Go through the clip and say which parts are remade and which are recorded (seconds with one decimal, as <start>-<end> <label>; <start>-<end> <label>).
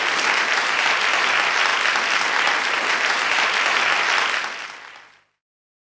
0.0-5.8 recorded